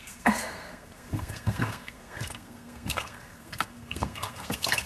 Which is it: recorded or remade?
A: remade